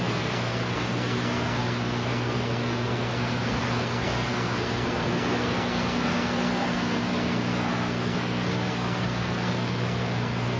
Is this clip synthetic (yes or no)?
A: yes